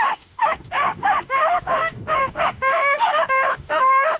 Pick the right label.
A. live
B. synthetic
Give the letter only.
B